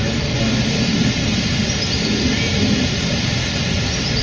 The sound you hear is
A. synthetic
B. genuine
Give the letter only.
B